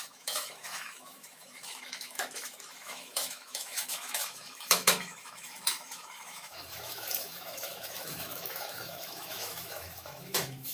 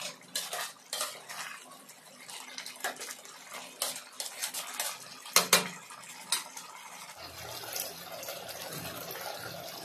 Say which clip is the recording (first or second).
second